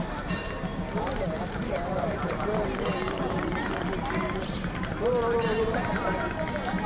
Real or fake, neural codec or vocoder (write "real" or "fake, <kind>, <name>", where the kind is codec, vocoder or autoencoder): fake, vocoder, BigVGAN v2